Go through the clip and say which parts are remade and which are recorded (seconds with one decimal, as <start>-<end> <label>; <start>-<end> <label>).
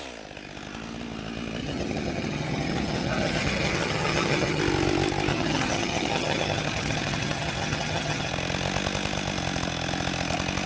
0.0-1.6 recorded; 1.6-4.6 remade; 4.6-5.3 recorded; 5.3-8.3 remade; 8.3-10.7 recorded